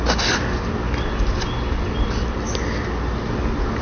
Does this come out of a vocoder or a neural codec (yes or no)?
no